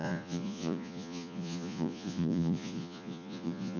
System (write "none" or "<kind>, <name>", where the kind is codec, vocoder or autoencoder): vocoder, Vocos